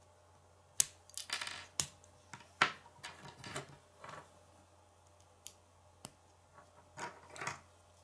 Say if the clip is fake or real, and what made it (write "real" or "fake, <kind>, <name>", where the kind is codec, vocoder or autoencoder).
real